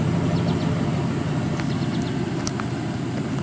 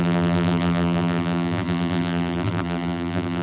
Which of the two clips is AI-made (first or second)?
second